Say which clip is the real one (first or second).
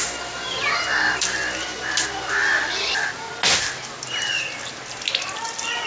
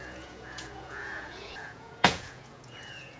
first